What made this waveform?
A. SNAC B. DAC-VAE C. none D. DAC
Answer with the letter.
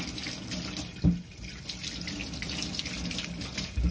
C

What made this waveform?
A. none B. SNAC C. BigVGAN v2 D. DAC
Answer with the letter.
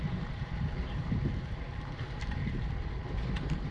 C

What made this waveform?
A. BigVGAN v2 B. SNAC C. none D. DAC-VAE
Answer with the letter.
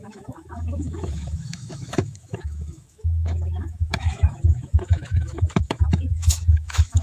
D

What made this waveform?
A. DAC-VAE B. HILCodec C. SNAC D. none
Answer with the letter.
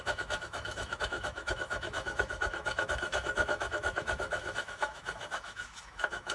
A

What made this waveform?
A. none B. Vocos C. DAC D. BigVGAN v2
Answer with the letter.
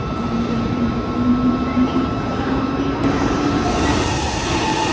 D